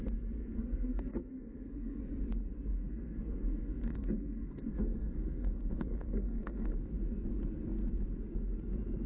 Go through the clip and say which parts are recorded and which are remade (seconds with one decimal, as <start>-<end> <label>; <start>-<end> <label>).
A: 0.0-0.4 recorded; 0.4-2.0 remade; 2.0-2.7 recorded; 2.7-6.7 remade; 6.7-9.1 recorded